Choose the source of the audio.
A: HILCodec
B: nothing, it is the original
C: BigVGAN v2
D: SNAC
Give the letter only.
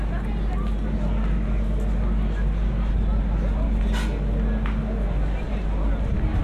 B